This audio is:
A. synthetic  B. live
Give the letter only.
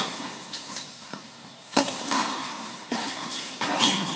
A